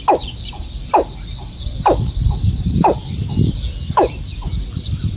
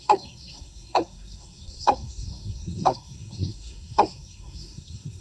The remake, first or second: second